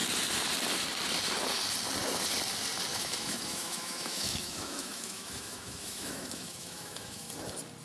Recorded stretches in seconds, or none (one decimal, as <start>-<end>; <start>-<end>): 0.0-2.9; 7.3-7.8